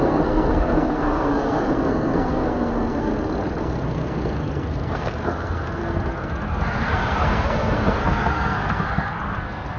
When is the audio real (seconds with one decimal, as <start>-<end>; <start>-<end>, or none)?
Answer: 3.1-3.6